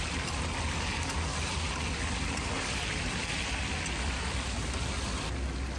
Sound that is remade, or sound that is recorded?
recorded